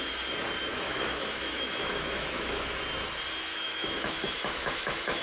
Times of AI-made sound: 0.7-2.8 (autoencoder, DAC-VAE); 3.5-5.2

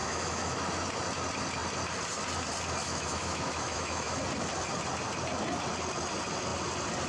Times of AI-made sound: 0.0-0.7 (autoencoder, DAC-VAE); 2.8-4.2

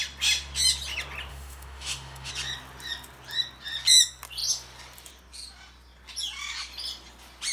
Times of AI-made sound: 1.3-2.3 (autoencoder, DAC-VAE)

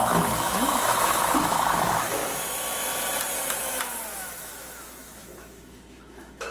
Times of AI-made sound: 0.0-2.2 (autoencoder, DAC-VAE); 4.1-6.5

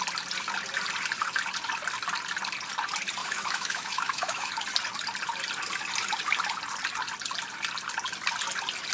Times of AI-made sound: 3.2-4.5 (autoencoder, DAC-VAE)

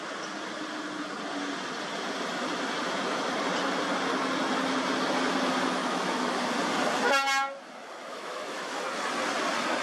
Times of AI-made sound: 5.8-6.4 (autoencoder, DAC-VAE); 8.0-8.8